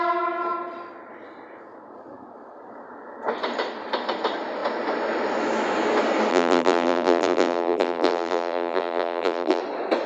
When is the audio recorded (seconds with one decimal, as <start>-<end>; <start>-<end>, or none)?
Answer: 0.0-6.3; 9.6-10.1